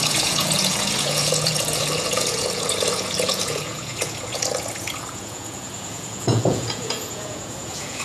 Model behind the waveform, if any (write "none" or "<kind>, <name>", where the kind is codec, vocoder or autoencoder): vocoder, Vocos